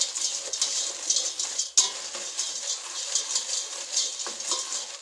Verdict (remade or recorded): recorded